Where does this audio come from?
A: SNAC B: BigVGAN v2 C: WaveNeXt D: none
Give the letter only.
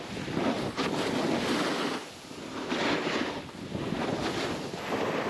D